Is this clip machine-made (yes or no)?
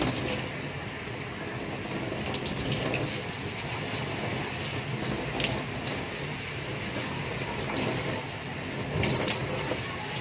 no